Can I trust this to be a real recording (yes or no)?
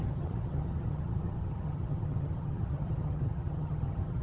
no